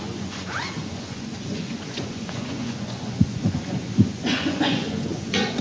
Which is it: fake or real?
fake